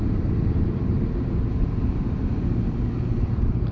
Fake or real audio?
fake